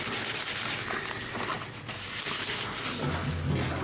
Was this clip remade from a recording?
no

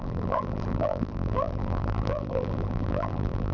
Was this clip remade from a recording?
yes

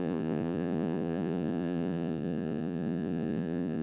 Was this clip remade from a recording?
yes